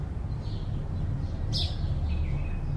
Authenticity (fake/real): real